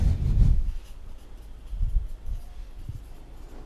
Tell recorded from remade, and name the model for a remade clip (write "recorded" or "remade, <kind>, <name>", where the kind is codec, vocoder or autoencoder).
recorded